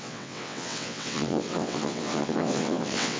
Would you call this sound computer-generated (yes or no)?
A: yes